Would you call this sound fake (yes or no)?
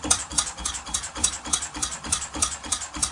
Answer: yes